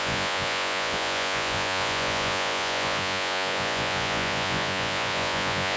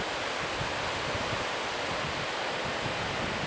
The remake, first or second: first